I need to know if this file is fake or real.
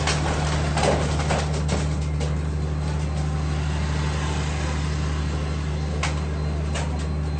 real